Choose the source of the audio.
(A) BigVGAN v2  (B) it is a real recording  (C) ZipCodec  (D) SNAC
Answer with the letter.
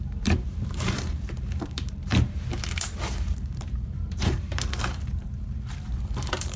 A